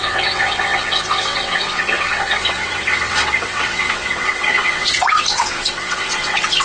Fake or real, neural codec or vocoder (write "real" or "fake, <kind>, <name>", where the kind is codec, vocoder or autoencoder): fake, vocoder, WaveNeXt